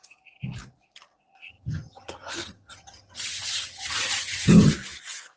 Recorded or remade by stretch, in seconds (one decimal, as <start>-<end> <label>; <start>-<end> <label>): 0.0-1.5 recorded; 1.5-4.7 remade; 4.7-5.4 recorded